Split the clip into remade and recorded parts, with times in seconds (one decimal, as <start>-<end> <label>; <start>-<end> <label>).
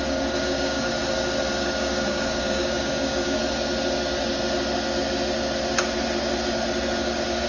0.0-0.9 remade; 0.9-1.6 recorded; 1.6-3.4 remade; 3.4-7.0 recorded; 7.0-7.5 remade